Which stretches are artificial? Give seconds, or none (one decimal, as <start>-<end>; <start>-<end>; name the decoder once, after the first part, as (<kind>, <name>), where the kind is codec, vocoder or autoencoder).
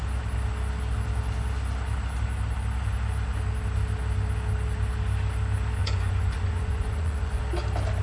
5.8-7.4 (vocoder, Vocos)